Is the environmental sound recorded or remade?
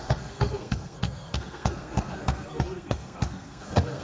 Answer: remade